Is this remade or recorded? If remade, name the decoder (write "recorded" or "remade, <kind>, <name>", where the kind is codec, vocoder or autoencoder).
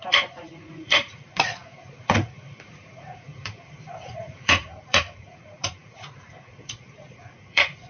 remade, vocoder, Vocos